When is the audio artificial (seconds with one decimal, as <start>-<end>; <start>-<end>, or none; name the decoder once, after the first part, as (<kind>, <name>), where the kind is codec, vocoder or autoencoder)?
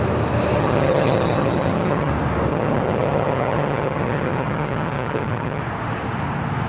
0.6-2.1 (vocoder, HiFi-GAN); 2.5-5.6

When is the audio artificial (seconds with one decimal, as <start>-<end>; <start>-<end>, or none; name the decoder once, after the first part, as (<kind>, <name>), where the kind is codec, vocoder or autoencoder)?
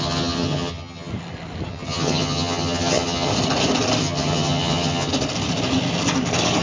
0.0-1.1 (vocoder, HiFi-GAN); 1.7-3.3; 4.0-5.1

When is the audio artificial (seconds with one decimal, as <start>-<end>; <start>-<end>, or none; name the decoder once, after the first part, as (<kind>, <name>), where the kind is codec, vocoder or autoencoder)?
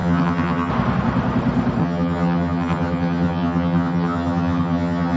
0.0-0.7 (vocoder, HiFi-GAN); 1.8-5.2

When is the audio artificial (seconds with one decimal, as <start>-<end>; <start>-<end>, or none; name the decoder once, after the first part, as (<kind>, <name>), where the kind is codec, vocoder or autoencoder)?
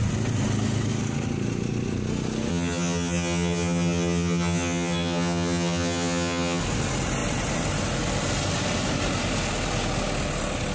2.5-6.6 (vocoder, HiFi-GAN)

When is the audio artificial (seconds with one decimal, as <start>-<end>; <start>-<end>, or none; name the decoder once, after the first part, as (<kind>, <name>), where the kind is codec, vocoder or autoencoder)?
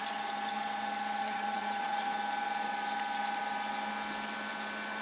1.2-2.1 (vocoder, HiFi-GAN)